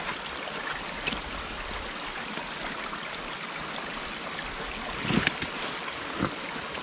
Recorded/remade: recorded